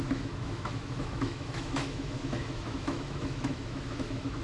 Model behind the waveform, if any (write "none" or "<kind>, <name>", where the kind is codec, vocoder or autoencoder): autoencoder, DAC-VAE